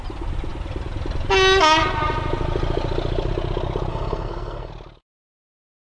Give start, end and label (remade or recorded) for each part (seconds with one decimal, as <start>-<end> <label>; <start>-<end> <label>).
0.0-3.9 recorded; 3.9-4.7 remade; 4.7-5.8 recorded